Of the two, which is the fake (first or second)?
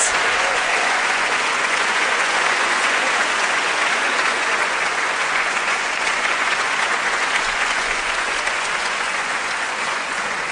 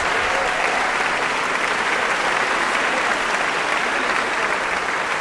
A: first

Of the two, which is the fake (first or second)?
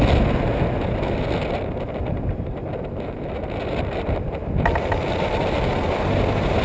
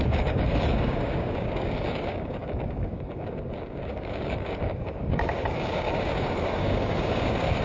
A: second